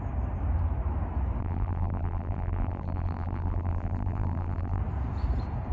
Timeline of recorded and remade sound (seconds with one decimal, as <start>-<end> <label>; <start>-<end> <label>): 0.0-1.4 recorded; 1.4-4.8 remade; 4.8-5.7 recorded